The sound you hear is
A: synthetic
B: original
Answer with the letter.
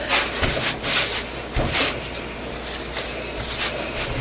B